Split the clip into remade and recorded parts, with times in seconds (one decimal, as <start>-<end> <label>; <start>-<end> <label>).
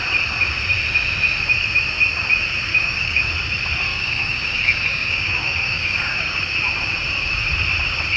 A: 0.0-2.7 recorded; 2.7-3.3 remade; 3.3-3.9 recorded; 3.9-6.4 remade; 6.4-8.2 recorded